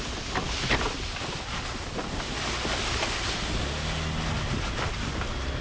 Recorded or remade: recorded